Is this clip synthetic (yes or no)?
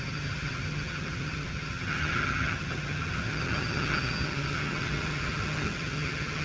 yes